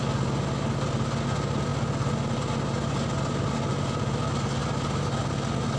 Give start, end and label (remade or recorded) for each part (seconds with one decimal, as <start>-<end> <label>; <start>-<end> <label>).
0.0-5.8 recorded